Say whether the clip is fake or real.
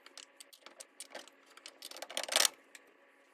real